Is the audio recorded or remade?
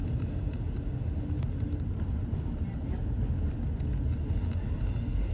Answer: recorded